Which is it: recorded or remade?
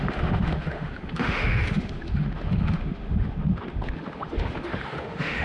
remade